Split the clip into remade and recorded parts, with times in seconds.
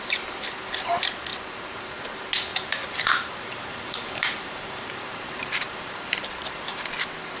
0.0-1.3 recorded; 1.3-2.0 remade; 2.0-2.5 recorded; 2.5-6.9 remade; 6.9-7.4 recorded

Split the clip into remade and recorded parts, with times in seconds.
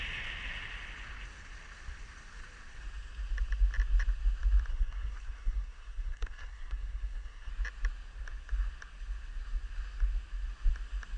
0.0-4.7 recorded; 4.7-7.5 remade; 7.5-11.2 recorded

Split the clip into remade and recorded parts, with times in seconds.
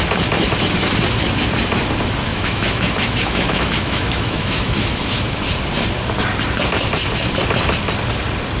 0.0-2.3 recorded; 2.3-5.4 remade; 5.4-8.6 recorded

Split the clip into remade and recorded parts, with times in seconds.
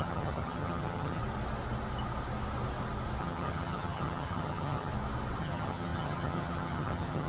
0.0-1.2 remade; 1.2-3.2 recorded; 3.2-4.9 remade; 4.9-5.4 recorded; 5.4-7.3 remade